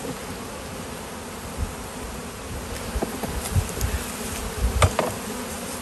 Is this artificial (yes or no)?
no